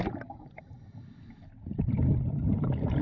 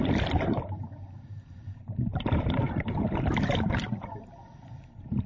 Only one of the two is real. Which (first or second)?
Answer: first